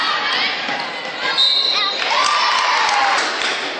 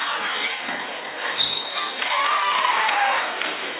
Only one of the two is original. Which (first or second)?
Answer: first